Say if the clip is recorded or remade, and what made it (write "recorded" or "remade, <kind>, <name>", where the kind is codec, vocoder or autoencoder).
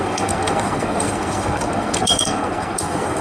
remade, codec, SNAC